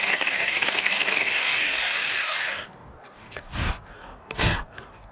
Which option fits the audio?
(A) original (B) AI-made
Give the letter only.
B